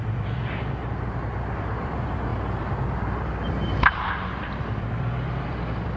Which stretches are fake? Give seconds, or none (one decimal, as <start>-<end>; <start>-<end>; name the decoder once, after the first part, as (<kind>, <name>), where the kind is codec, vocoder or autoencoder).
0.0-6.0 (vocoder, BigVGAN v2)